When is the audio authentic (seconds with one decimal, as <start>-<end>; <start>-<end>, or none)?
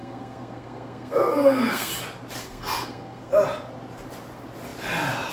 1.9-2.4; 3.3-5.3